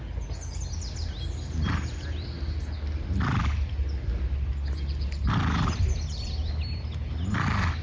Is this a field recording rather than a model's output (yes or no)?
yes